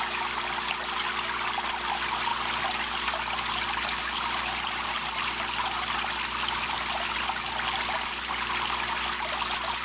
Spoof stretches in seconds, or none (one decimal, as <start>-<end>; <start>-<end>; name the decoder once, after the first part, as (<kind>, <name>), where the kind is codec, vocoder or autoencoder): none